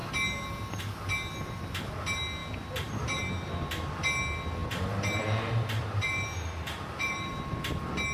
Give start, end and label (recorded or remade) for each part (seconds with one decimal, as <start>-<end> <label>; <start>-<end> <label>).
0.0-4.6 recorded; 4.6-7.3 remade; 7.3-8.1 recorded